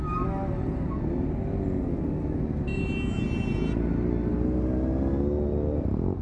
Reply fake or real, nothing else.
real